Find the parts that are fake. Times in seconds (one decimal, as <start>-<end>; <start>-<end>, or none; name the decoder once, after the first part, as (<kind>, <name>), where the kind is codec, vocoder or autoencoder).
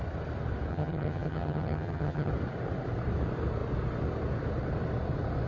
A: 0.7-2.3 (vocoder, HiFi-GAN)